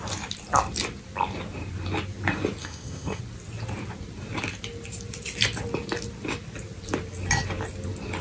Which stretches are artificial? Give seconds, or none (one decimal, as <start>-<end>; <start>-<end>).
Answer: 2.6-3.2